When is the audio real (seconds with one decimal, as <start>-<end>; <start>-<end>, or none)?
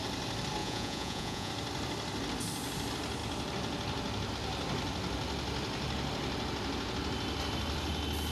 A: 0.0-0.6; 1.5-8.3